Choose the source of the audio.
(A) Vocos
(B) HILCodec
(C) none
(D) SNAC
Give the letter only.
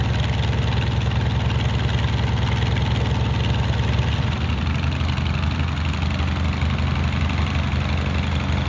C